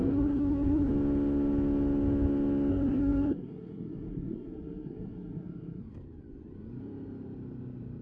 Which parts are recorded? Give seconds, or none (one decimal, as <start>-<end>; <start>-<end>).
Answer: 0.9-2.7; 5.8-8.0